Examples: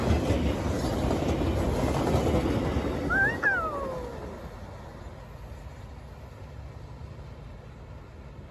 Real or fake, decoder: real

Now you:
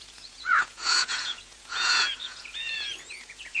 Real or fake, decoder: fake, vocoder, Vocos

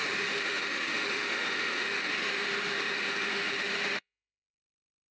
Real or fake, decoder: fake, autoencoder, DAC-VAE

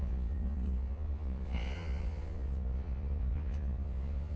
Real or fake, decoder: fake, vocoder, Vocos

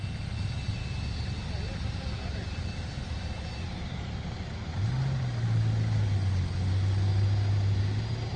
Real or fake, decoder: real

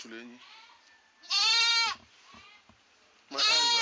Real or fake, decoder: real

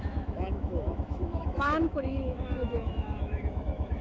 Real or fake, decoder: fake, autoencoder, DAC-VAE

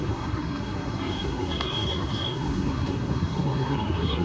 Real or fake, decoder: fake, codec, SNAC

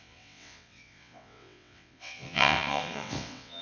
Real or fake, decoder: fake, vocoder, WaveNeXt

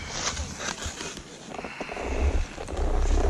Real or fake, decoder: real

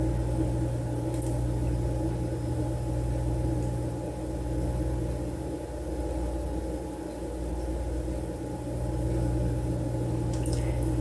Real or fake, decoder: real